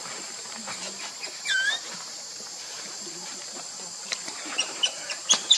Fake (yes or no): yes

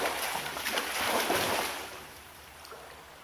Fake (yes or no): yes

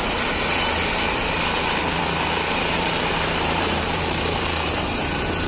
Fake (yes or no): yes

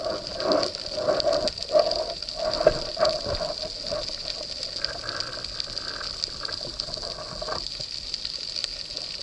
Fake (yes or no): no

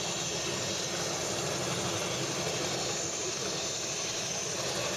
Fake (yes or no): no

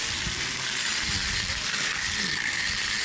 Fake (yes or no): yes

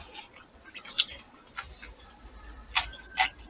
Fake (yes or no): yes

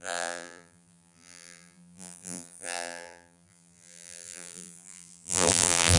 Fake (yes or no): yes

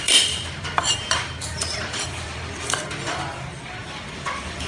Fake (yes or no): yes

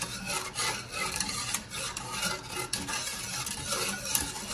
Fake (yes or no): no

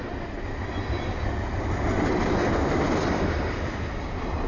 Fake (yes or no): no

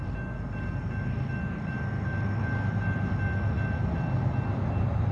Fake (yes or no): no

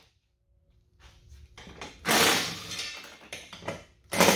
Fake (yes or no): yes